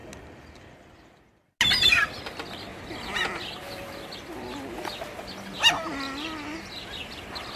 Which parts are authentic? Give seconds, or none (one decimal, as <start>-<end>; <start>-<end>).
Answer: 0.0-7.6